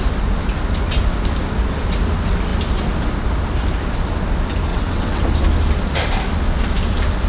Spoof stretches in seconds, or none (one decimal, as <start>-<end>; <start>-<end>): 4.7-5.2